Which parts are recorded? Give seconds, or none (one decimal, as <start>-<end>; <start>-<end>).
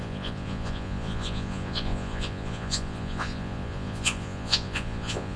none